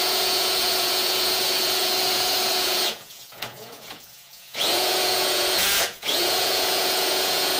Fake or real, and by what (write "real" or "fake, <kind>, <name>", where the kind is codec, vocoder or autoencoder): fake, vocoder, Vocos